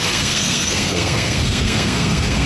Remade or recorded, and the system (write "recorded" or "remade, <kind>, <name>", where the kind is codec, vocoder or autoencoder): remade, codec, SNAC